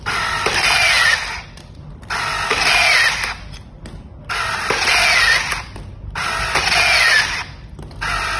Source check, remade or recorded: recorded